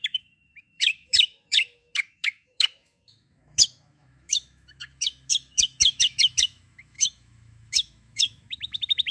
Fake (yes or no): yes